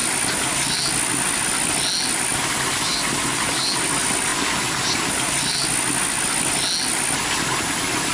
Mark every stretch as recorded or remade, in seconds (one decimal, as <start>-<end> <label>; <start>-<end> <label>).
0.0-8.1 recorded

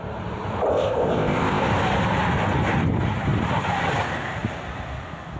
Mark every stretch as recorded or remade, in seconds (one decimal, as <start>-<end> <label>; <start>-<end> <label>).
0.0-0.7 recorded; 0.7-1.6 remade; 1.6-5.4 recorded

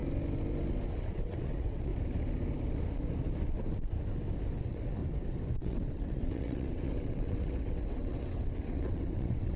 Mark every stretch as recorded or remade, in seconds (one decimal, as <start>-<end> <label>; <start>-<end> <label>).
0.0-0.9 recorded; 0.9-1.9 remade; 1.9-4.6 recorded; 4.6-5.0 remade; 5.0-5.6 recorded; 5.6-9.6 remade

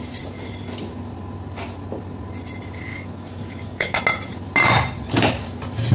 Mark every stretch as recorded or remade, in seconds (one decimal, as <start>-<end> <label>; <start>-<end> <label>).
0.0-2.9 recorded; 2.9-4.0 remade; 4.0-5.9 recorded